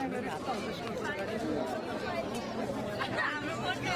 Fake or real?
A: real